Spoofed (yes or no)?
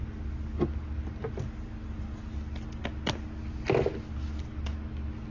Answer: no